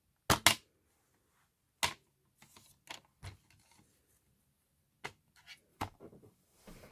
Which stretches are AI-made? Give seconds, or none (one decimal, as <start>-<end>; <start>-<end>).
5.7-6.9